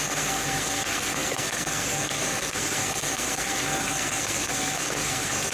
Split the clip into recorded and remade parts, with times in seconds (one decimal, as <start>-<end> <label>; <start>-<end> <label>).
0.0-5.5 remade